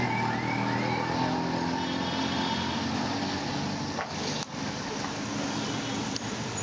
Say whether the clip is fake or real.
real